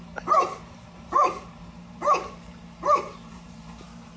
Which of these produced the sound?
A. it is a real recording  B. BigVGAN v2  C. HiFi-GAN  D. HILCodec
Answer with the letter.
B